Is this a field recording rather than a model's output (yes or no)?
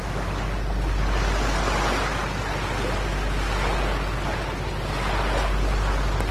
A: yes